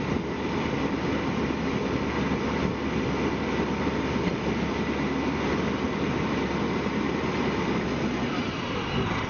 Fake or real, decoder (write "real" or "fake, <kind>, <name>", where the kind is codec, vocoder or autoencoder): real